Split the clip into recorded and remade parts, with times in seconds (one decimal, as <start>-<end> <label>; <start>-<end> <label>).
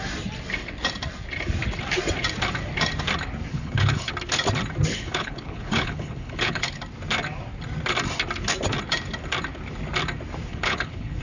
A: 0.0-3.5 recorded; 3.5-4.1 remade; 4.1-4.9 recorded; 4.9-6.8 remade; 6.8-10.5 recorded; 10.5-11.2 remade